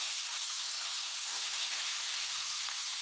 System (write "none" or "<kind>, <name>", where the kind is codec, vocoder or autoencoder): autoencoder, DAC-VAE